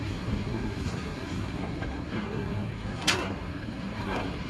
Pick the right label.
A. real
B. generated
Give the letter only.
B